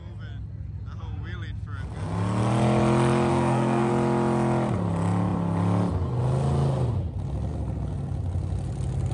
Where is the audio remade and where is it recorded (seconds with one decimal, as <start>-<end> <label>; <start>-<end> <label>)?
0.0-3.3 recorded; 3.3-3.9 remade; 3.9-9.1 recorded